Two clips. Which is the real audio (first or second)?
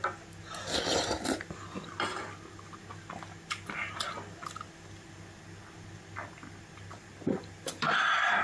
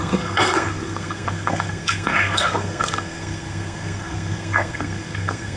first